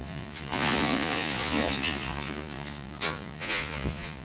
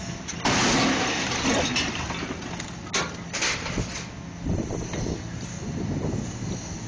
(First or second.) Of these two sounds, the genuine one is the second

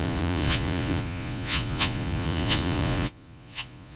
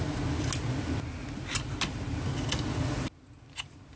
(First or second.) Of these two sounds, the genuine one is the second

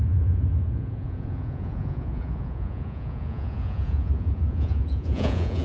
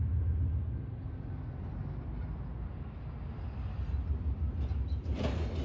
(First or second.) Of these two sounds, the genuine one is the second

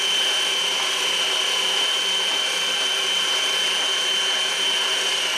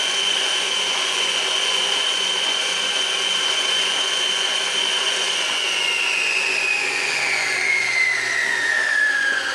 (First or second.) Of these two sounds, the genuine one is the first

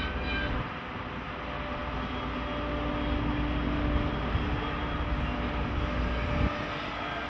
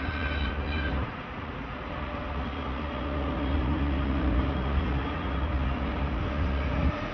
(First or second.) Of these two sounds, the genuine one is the first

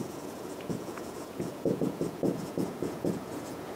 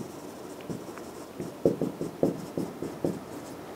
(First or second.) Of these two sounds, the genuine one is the second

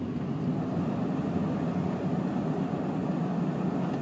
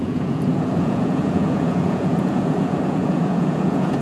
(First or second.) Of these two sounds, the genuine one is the first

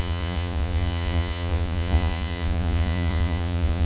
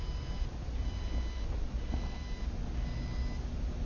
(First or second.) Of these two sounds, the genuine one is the second